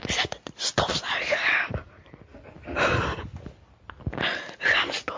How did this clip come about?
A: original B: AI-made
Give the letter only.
A